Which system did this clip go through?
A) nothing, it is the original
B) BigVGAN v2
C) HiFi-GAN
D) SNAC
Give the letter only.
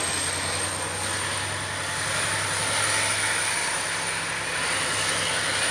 A